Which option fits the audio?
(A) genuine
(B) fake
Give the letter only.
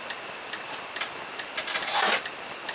A